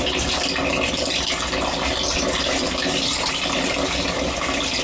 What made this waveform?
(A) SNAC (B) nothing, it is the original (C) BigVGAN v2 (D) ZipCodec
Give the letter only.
B